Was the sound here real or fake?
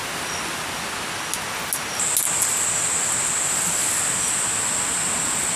real